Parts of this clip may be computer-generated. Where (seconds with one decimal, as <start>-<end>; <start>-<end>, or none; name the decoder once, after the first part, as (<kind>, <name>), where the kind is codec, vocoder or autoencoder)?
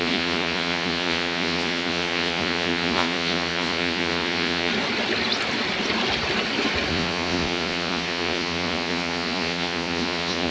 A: 0.0-4.7 (vocoder, Vocos); 6.9-10.5